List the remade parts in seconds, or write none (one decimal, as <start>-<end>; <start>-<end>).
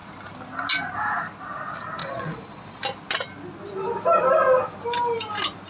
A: 2.0-2.8